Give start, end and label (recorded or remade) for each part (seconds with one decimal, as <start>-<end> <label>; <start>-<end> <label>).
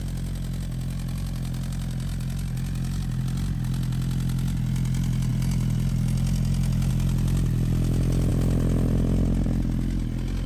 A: 0.0-10.5 recorded